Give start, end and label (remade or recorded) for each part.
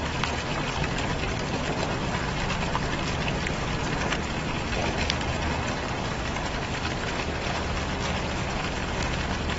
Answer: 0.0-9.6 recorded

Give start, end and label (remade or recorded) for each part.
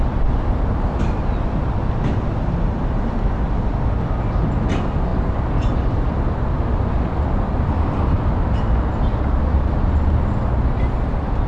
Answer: 0.0-11.5 recorded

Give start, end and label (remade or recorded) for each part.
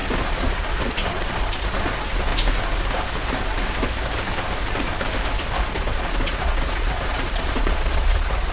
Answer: 0.0-2.3 remade; 2.3-5.4 recorded; 5.4-8.5 remade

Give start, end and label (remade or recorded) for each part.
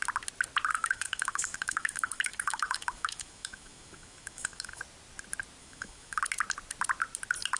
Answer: 0.0-0.7 recorded; 0.7-4.8 remade; 4.8-5.6 recorded; 5.6-6.2 remade; 6.2-7.6 recorded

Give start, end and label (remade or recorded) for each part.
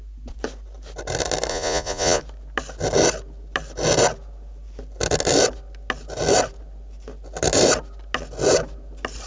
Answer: 0.0-1.5 recorded; 1.5-2.2 remade; 2.2-9.3 recorded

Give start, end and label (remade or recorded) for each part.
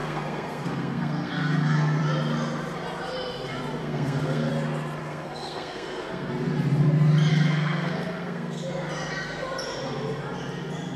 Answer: 0.0-2.0 remade; 2.0-3.8 recorded; 3.8-4.5 remade; 4.5-5.0 recorded; 5.0-6.3 remade; 6.3-7.3 recorded; 7.3-8.7 remade; 8.7-11.0 recorded